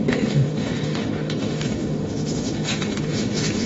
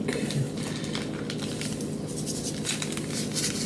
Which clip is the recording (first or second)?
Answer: second